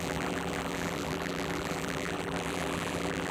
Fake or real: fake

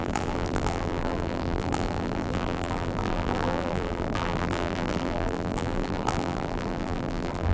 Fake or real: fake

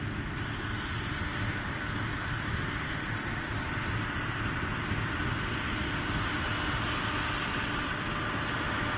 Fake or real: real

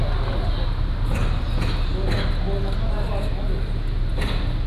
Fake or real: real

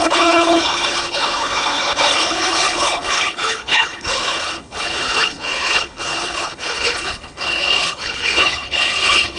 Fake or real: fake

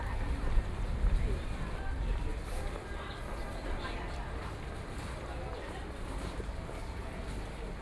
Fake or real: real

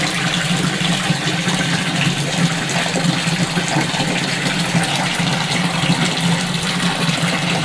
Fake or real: real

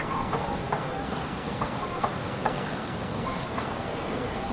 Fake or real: fake